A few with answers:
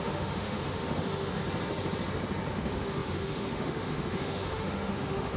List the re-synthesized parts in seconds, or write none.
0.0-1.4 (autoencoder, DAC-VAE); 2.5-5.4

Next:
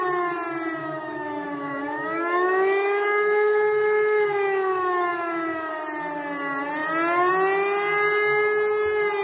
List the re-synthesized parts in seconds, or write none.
0.8-5.7 (autoencoder, DAC-VAE)

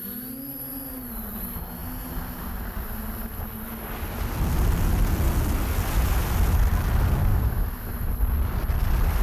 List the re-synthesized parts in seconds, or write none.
7.3-8.1 (autoencoder, DAC-VAE)

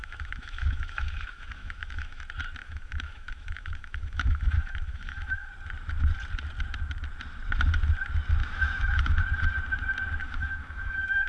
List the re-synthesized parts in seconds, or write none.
0.0-2.2 (autoencoder, DAC-VAE); 2.6-5.5; 8.4-9.2; 10.2-11.3

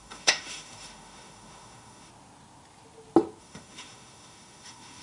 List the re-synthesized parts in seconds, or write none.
0.0-2.1 (autoencoder, DAC-VAE); 3.4-5.0

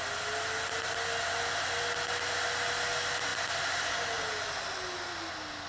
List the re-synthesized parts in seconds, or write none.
none

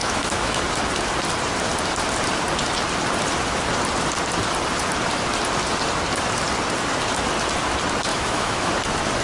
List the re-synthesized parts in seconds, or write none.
0.0-0.6 (autoencoder, DAC-VAE); 8.1-8.7